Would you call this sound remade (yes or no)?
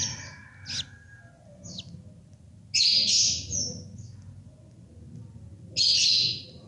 no